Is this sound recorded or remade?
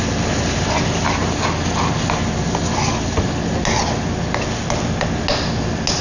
recorded